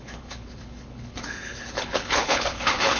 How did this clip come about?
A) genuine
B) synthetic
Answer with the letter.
B